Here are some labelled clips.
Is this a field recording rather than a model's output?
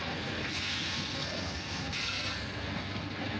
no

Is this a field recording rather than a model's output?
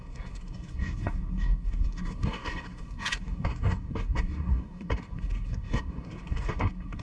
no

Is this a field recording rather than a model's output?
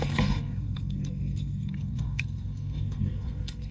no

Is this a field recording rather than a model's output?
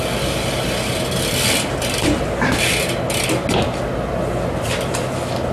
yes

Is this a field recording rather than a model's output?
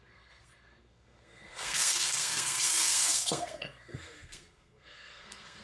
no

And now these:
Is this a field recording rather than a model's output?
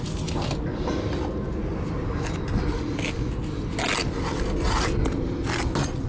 yes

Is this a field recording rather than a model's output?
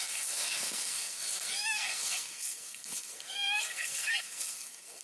no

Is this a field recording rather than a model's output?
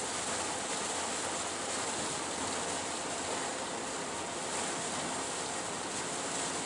yes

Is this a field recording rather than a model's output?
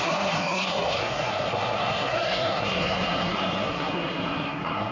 no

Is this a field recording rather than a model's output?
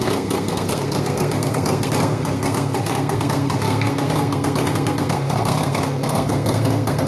no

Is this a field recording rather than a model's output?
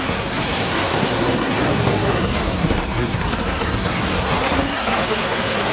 no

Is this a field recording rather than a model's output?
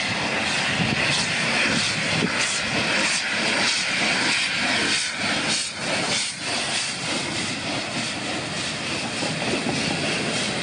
yes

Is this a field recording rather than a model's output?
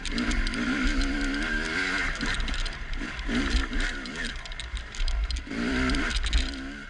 yes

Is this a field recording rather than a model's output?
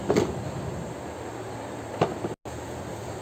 yes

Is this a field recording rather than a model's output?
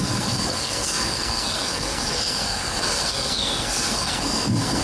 no